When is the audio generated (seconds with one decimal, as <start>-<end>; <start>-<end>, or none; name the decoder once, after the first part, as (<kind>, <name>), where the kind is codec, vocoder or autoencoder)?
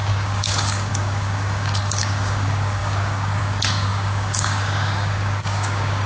0.0-6.1 (codec, DAC)